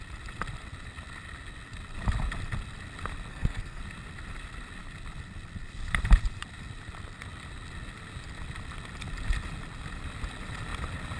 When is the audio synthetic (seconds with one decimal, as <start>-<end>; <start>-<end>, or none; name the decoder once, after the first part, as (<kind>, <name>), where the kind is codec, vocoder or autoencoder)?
3.3-3.8 (codec, SNAC)